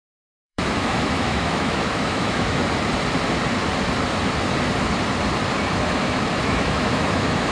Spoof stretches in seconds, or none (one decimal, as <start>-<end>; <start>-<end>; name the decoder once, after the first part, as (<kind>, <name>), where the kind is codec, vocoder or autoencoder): 0.0-2.6 (autoencoder, DAC-VAE); 6.4-7.5